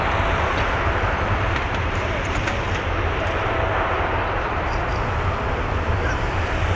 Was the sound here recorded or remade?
recorded